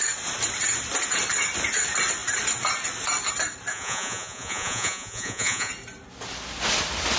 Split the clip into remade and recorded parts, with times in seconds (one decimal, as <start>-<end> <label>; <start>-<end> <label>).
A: 0.0-3.7 recorded; 3.7-5.7 remade; 5.7-7.2 recorded

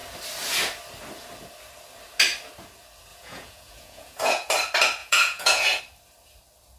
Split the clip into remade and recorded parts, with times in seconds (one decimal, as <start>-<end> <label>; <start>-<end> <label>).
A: 0.0-3.1 recorded; 3.1-4.5 remade; 4.5-5.0 recorded; 5.0-5.8 remade; 5.8-6.8 recorded